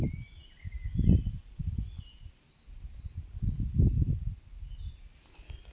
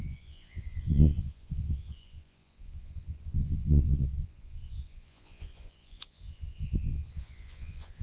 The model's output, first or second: second